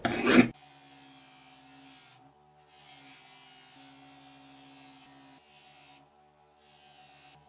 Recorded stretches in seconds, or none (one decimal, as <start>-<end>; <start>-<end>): 0.0-7.5